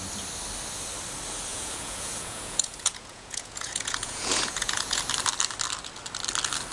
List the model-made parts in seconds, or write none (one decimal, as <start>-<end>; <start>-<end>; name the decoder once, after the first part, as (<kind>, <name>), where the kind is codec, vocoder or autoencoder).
1.5-5.0 (vocoder, Vocos)